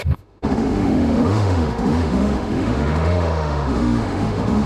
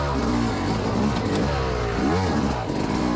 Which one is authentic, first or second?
second